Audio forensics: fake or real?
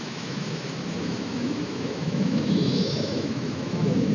fake